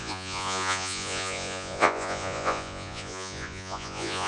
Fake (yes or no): yes